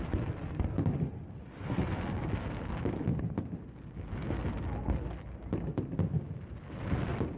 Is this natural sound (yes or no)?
yes